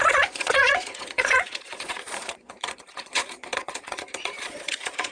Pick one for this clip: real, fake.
fake